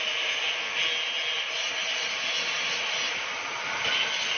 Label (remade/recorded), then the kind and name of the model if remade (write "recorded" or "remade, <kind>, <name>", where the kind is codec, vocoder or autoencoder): recorded